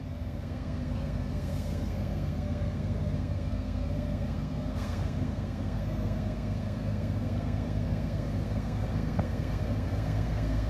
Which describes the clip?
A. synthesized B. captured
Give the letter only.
A